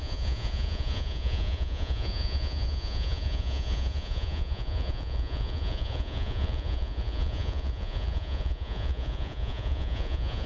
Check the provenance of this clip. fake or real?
fake